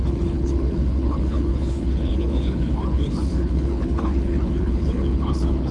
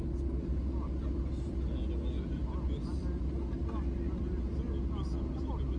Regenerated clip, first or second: first